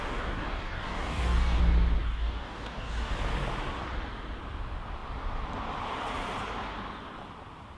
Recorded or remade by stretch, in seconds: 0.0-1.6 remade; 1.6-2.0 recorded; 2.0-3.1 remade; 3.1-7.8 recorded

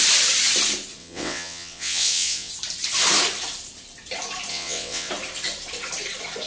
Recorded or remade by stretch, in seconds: 0.0-1.0 recorded; 1.0-2.5 remade; 2.5-4.5 recorded; 4.5-5.1 remade; 5.1-6.5 recorded

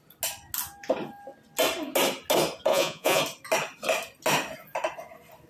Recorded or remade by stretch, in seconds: 0.0-2.7 recorded; 2.7-3.2 remade; 3.2-5.5 recorded

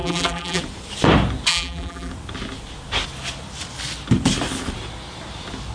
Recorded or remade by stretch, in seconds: 0.0-0.6 remade; 0.6-1.5 recorded; 1.5-2.1 remade; 2.1-5.7 recorded

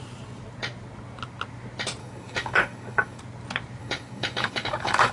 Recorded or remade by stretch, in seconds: 0.0-2.0 recorded; 2.0-3.2 remade; 3.2-3.8 recorded; 3.8-5.1 remade

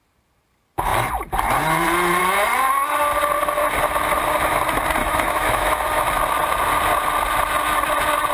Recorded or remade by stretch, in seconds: 0.0-5.0 recorded; 5.0-6.0 remade; 6.0-8.3 recorded